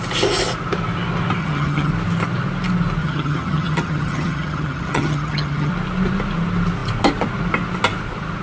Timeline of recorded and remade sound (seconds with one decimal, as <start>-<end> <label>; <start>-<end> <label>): 0.0-1.4 recorded; 1.4-1.9 remade; 1.9-3.0 recorded; 3.0-5.7 remade; 5.7-8.4 recorded